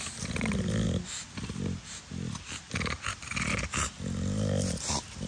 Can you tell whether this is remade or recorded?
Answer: recorded